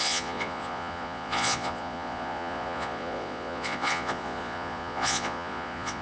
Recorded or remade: remade